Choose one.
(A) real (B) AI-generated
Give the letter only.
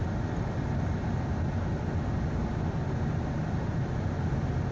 A